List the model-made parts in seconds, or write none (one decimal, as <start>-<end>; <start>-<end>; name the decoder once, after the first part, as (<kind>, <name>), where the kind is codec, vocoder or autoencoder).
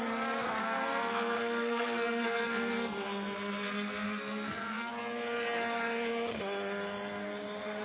0.6-4.9 (codec, SNAC)